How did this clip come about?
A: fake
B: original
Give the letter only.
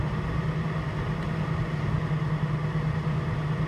B